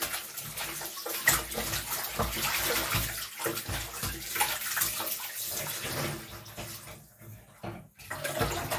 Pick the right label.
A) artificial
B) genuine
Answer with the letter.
B